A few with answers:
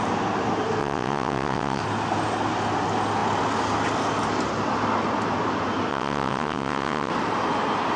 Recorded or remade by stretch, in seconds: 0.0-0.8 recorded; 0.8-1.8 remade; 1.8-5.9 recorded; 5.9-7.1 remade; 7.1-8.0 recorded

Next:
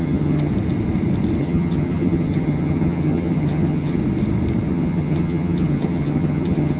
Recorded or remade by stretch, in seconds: 0.0-0.5 remade; 0.5-1.4 recorded; 1.4-4.0 remade; 4.0-4.7 recorded; 4.7-6.8 remade